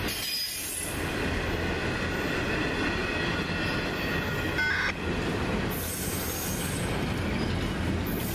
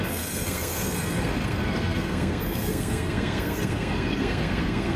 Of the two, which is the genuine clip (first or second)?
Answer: first